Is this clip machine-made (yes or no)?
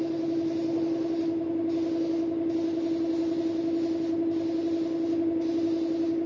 no